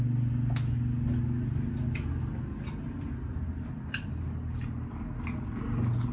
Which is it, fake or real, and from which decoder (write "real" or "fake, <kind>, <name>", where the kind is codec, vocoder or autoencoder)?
real